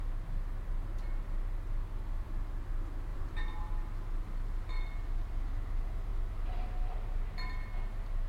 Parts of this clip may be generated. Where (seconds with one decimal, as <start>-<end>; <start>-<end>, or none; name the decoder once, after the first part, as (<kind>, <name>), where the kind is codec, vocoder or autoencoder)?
3.1-3.7 (vocoder, BigVGAN v2)

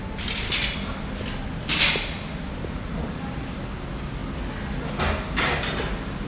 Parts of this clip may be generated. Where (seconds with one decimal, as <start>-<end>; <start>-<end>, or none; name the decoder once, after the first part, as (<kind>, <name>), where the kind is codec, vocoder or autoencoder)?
none

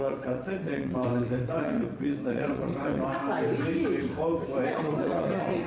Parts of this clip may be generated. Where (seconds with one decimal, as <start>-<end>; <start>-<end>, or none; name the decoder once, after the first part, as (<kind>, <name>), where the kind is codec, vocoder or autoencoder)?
0.0-3.2 (vocoder, WaveNeXt); 4.7-5.7

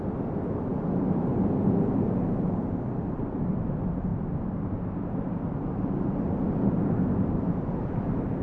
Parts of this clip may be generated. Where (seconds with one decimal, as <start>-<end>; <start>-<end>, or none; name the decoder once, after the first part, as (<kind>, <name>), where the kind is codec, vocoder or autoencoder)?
none

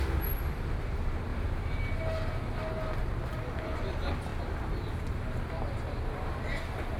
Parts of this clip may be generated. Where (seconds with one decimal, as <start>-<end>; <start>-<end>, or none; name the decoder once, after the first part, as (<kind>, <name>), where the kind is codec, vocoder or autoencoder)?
1.3-1.8 (vocoder, BigVGAN v2)

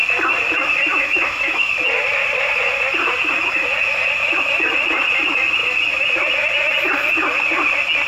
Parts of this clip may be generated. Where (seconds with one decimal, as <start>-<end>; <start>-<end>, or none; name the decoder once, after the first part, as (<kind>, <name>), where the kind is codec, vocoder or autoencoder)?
0.9-1.7 (autoencoder, DAC-VAE)